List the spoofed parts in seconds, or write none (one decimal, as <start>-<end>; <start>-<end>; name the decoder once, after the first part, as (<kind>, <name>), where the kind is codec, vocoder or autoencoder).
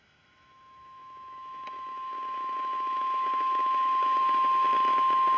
0.0-5.4 (autoencoder, DAC-VAE)